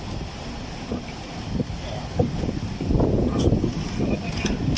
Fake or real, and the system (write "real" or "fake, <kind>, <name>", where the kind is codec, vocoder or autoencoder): real